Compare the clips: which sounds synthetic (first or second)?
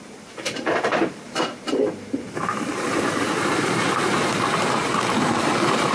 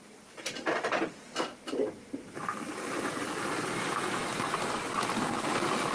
first